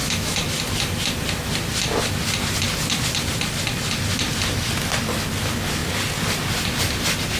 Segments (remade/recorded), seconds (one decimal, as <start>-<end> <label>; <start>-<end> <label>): 0.0-0.6 remade; 0.6-7.4 recorded